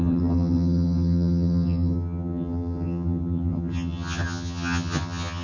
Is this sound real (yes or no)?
no